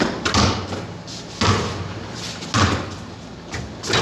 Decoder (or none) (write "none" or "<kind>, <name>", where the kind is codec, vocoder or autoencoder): none